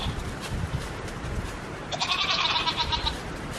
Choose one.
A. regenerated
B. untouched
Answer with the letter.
A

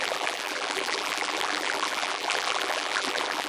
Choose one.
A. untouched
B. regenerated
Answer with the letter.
B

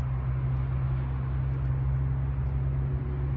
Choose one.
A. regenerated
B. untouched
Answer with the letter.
B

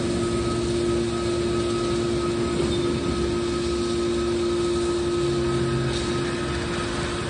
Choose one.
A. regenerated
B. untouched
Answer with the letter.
B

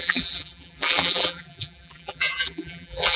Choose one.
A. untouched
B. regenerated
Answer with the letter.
B